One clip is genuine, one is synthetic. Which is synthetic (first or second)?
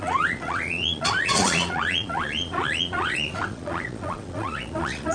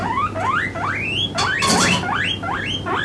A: first